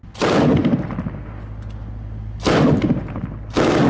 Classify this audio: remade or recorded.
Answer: recorded